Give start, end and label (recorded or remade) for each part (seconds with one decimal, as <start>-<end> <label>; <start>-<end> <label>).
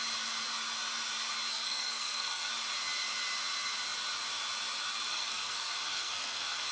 0.0-1.5 recorded; 1.5-2.5 remade; 2.5-5.1 recorded; 5.1-6.7 remade